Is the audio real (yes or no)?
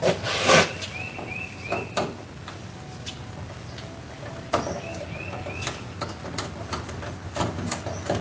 yes